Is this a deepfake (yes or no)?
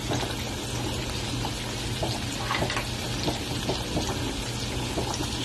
no